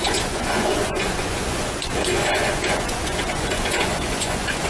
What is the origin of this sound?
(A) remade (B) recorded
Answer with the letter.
A